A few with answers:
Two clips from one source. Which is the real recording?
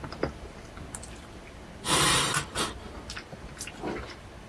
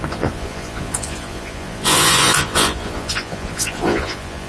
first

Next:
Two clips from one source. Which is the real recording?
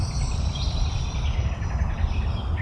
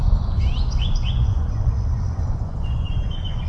first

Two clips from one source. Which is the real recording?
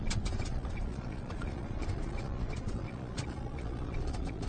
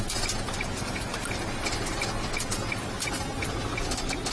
second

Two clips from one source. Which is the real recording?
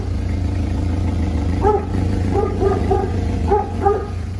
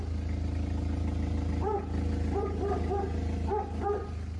second